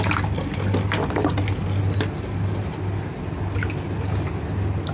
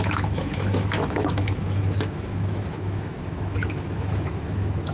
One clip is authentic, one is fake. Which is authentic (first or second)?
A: first